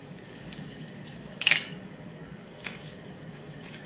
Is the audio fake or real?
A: fake